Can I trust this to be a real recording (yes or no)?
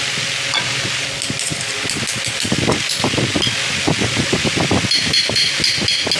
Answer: yes